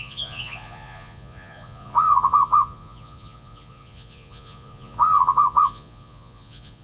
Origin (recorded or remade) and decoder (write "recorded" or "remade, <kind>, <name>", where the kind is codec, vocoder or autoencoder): remade, vocoder, Vocos